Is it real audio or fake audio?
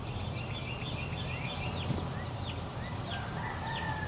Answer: real